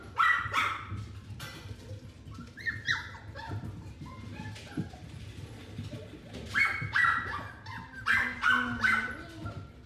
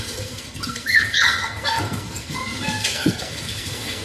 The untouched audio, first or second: first